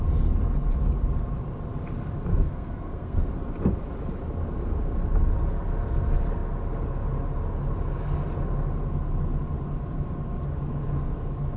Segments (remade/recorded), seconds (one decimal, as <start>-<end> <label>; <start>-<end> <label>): 0.0-2.3 recorded; 2.3-3.3 remade; 3.3-11.6 recorded